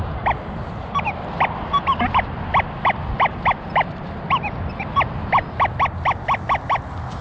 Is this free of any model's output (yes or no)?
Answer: yes